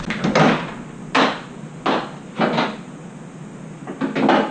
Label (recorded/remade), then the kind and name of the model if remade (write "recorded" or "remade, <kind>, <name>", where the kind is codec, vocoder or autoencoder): recorded